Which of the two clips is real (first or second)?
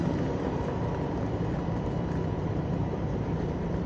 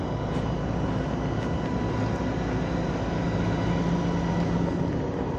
second